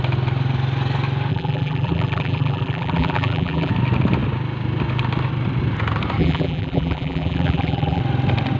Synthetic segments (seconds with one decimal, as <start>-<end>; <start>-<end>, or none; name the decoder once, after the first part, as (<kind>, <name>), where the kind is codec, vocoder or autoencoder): 1.3-3.7 (vocoder, BigVGAN v2); 6.2-8.0